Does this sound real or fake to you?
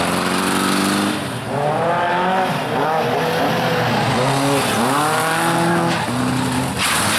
real